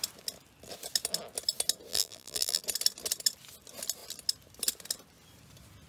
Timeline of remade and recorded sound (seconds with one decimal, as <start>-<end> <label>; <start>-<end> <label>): 0.0-1.9 recorded; 1.9-2.6 remade; 2.6-5.9 recorded